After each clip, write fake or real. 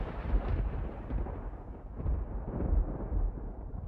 fake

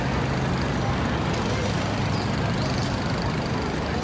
real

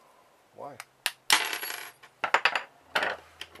real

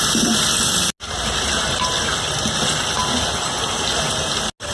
real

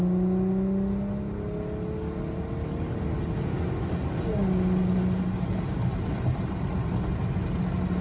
real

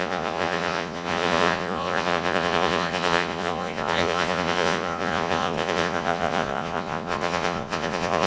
fake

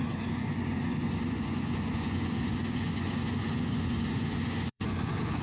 fake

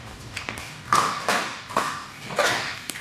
fake